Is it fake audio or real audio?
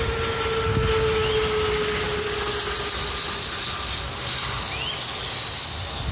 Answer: real